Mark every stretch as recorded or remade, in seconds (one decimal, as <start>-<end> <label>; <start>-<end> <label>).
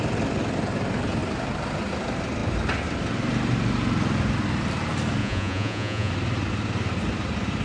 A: 0.0-5.2 recorded; 5.2-6.1 remade; 6.1-7.6 recorded